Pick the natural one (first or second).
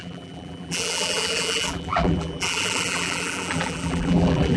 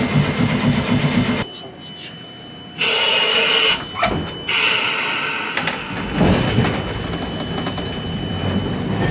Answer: second